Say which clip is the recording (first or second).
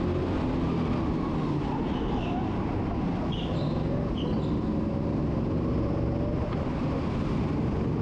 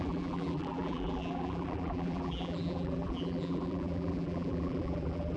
first